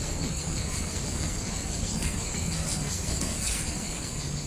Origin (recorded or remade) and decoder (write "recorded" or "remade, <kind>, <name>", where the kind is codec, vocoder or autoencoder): remade, codec, SNAC